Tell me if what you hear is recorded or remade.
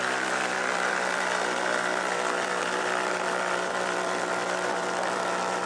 remade